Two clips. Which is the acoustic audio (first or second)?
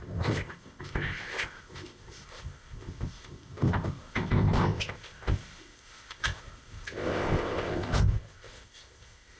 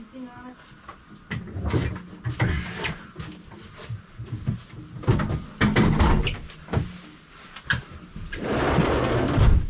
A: second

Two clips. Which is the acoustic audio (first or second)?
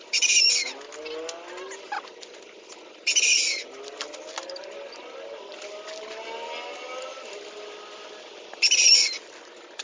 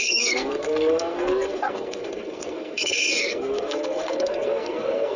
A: first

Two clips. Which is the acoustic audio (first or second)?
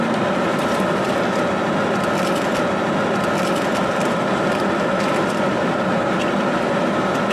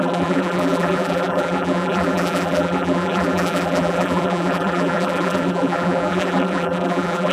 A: first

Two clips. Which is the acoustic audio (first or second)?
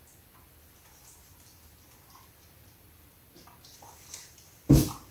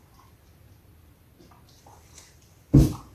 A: second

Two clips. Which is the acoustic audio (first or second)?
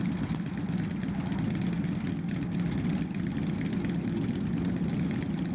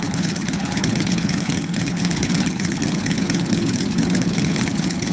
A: first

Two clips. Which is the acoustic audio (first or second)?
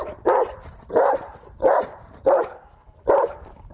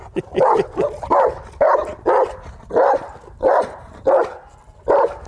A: second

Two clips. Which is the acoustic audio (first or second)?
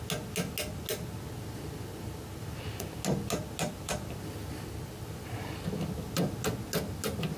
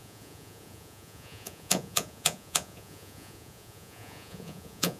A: first